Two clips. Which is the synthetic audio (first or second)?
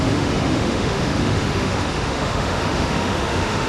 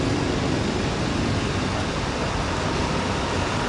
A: first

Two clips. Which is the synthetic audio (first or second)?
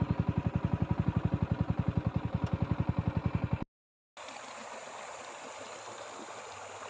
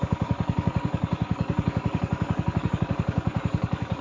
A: second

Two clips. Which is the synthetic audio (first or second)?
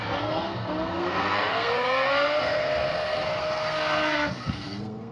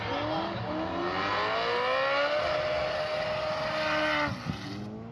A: first